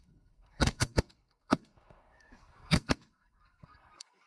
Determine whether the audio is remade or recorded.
remade